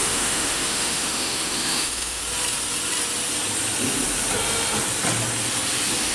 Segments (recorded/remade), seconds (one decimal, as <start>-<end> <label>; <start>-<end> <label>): 0.0-2.2 remade; 2.2-6.1 recorded